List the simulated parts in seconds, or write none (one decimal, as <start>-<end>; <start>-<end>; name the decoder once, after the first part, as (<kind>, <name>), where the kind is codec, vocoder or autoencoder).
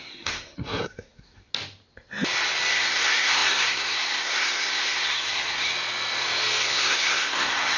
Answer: 0.0-1.5 (codec, SNAC); 2.7-5.7; 6.6-7.8